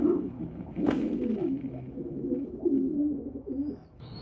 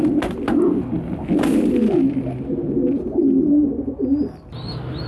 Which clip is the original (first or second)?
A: second